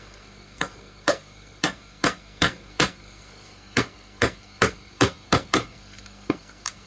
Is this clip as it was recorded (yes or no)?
no